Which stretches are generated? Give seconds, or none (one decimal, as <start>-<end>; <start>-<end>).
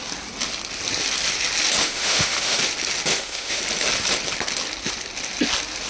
1.8-2.6; 3.1-3.6